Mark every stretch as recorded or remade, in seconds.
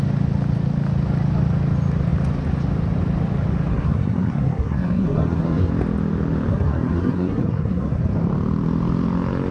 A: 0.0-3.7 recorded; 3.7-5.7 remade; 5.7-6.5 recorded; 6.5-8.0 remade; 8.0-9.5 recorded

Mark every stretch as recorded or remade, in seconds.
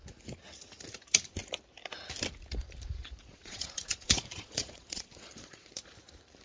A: 0.0-3.0 recorded; 3.0-5.7 remade; 5.7-6.4 recorded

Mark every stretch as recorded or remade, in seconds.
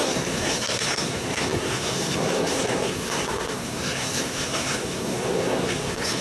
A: 0.0-6.2 remade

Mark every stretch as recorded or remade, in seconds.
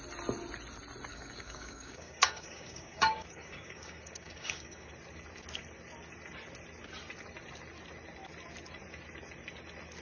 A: 0.0-1.1 recorded; 1.1-4.9 remade; 4.9-10.0 recorded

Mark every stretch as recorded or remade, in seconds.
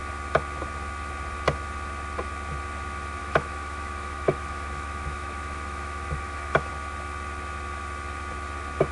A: 0.0-3.2 recorded; 3.2-6.7 remade; 6.7-8.9 recorded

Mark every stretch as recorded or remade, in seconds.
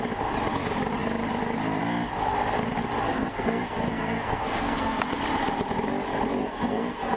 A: 0.0-3.1 recorded; 3.1-5.0 remade; 5.0-6.4 recorded; 6.4-7.2 remade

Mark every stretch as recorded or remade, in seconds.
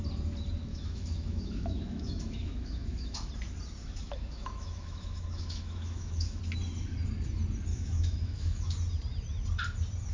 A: 0.0-0.7 recorded; 0.7-3.3 remade; 3.3-3.8 recorded; 3.8-6.4 remade; 6.4-7.7 recorded; 7.7-8.7 remade; 8.7-10.1 recorded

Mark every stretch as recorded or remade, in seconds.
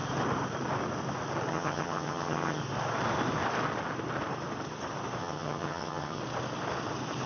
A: 0.0-1.5 recorded; 1.5-2.6 remade; 2.6-5.2 recorded; 5.2-6.2 remade; 6.2-7.3 recorded